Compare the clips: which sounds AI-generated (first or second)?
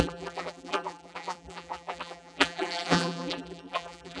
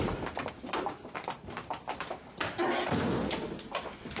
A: first